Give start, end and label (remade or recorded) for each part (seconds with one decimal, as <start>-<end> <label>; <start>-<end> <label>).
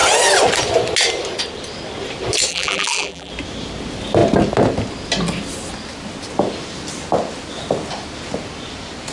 0.0-2.5 recorded; 2.5-3.3 remade; 3.3-9.1 recorded